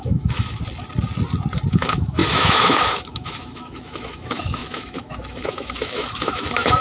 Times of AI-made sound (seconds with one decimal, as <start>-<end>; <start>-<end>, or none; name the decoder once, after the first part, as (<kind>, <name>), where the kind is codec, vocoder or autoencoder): 0.0-0.6 (autoencoder, DAC-VAE); 1.7-6.8